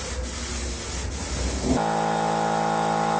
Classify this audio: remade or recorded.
recorded